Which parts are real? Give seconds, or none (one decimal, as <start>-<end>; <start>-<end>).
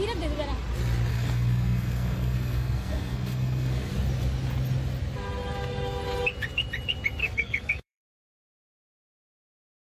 0.0-1.1; 3.9-7.2; 8.5-9.8